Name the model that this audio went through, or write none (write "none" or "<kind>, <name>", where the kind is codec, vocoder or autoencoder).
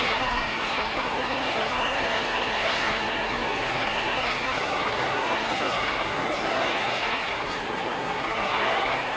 codec, SNAC